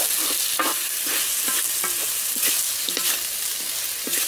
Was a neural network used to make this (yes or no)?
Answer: no